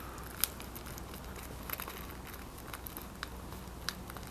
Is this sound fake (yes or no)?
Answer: no